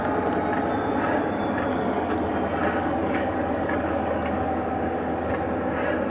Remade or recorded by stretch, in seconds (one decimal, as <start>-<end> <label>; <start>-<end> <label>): 0.0-1.7 recorded; 1.7-2.3 remade; 2.3-2.8 recorded; 2.8-5.3 remade; 5.3-6.1 recorded